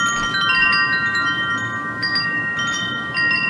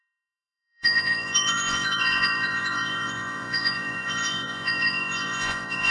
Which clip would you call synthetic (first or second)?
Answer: second